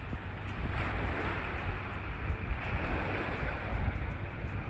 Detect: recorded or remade recorded